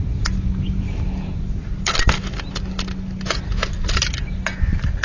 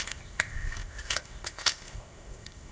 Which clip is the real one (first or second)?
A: first